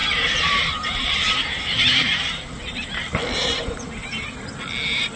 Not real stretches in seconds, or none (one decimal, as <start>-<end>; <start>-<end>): 0.0-2.9